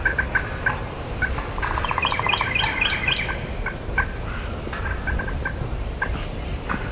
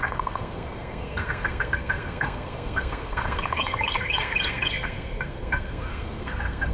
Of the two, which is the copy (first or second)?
second